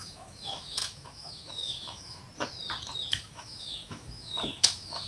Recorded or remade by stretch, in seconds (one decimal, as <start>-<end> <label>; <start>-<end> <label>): 0.0-2.2 remade; 2.2-3.1 recorded; 3.1-5.1 remade